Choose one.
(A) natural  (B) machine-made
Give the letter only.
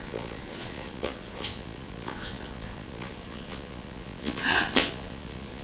B